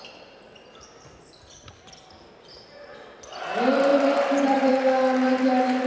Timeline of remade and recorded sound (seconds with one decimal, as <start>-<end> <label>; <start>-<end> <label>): 0.0-3.9 recorded; 3.9-4.7 remade; 4.7-5.9 recorded